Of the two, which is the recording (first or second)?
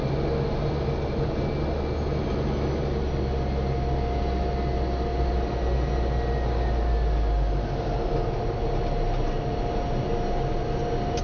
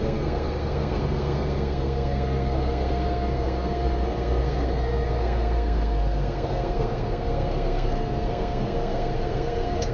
first